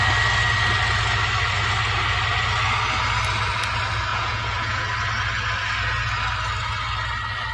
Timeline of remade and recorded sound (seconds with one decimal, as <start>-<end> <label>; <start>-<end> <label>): 0.0-4.1 recorded; 4.1-4.8 remade; 4.8-7.5 recorded